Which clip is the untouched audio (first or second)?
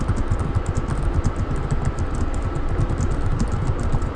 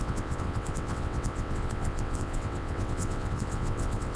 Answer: first